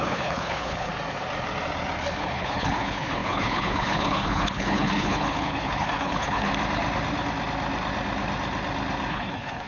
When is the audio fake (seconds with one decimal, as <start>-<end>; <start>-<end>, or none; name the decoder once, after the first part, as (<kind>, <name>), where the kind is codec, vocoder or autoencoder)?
0.0-0.9 (codec, HILCodec); 2.2-6.5; 9.1-9.7

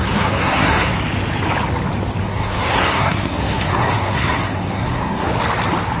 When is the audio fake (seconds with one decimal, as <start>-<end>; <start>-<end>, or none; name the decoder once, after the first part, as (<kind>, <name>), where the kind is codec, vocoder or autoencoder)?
0.0-0.9 (codec, SNAC); 2.2-5.3

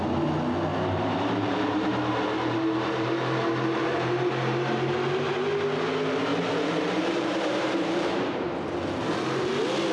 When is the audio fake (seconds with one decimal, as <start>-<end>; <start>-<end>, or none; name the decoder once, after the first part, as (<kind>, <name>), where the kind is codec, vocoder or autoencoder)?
0.7-4.9 (vocoder, BigVGAN v2); 6.3-8.5

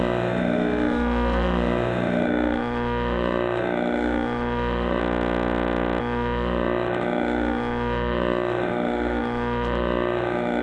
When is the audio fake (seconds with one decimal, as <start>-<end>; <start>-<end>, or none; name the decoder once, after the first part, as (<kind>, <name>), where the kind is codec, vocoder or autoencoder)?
0.0-5.0 (autoencoder, DAC-VAE); 6.0-10.6

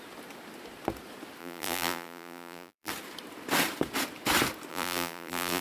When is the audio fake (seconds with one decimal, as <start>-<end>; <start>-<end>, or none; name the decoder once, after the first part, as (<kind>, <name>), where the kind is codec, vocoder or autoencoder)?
1.4-2.9 (vocoder, BigVGAN v2); 4.7-5.6

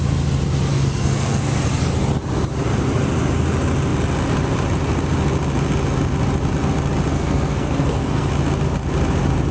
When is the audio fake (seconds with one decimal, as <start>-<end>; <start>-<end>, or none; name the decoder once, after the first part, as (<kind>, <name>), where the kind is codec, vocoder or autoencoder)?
0.7-1.4 (codec, SNAC); 7.1-8.3

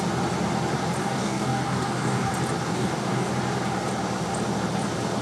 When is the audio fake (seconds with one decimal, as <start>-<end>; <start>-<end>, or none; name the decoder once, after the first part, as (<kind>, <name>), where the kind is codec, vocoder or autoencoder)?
1.0-2.3 (codec, DAC); 2.7-3.3